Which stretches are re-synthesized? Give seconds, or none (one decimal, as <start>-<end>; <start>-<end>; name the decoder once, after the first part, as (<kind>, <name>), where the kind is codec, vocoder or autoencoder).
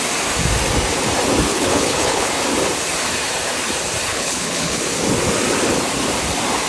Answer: 1.5-2.3 (codec, HILCodec); 4.1-4.8